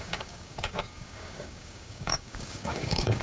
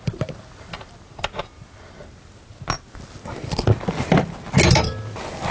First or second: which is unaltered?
second